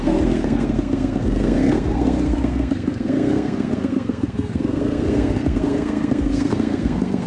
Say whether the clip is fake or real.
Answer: fake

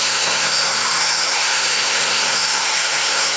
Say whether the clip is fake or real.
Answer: fake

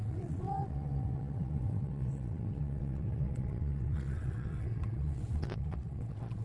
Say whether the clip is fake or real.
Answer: fake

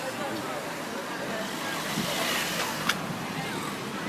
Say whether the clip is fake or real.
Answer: real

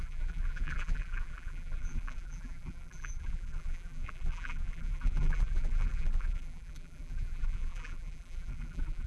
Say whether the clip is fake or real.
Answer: fake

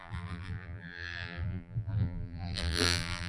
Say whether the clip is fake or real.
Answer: fake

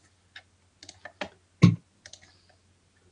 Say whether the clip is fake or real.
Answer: real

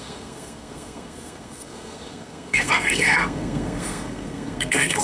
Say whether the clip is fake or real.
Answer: fake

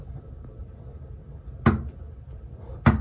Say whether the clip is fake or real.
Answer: real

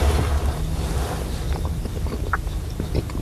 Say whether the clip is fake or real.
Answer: real